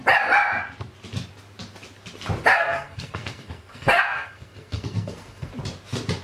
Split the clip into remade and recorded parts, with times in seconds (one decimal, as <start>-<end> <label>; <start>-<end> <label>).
0.0-2.5 recorded; 2.5-5.5 remade; 5.5-6.2 recorded

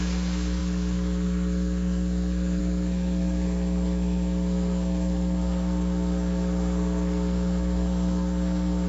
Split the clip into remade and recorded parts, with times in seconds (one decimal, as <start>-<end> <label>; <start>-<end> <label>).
0.0-8.9 remade

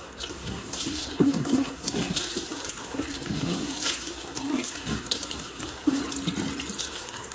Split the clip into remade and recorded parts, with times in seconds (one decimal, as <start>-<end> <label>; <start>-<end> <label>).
0.0-6.0 remade; 6.0-6.8 recorded; 6.8-7.3 remade

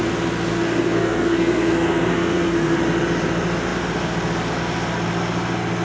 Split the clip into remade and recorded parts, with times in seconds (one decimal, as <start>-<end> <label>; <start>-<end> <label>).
0.0-0.5 recorded; 0.5-2.8 remade; 2.8-5.8 recorded

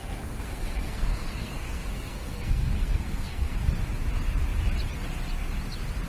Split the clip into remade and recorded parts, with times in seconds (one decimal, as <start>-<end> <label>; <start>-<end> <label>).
0.0-3.7 remade; 3.7-6.1 recorded

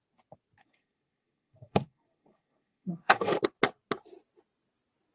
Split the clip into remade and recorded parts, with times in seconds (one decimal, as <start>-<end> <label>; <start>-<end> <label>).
0.0-0.6 recorded; 0.6-3.4 remade; 3.4-5.1 recorded

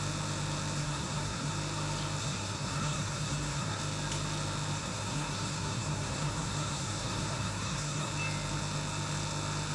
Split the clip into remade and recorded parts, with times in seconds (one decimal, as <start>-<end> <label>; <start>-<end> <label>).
0.0-0.8 recorded; 0.8-1.5 remade; 1.5-2.2 recorded; 2.2-3.8 remade; 3.8-4.8 recorded; 4.8-8.1 remade; 8.1-9.7 recorded